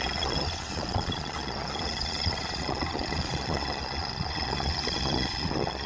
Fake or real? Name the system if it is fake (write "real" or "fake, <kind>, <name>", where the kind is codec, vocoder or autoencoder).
fake, vocoder, Vocos